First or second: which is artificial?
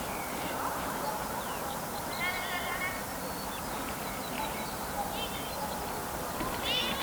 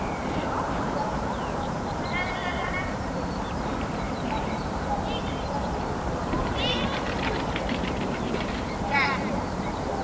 second